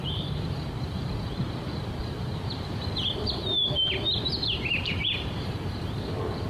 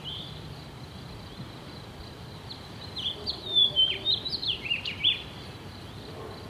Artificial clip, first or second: first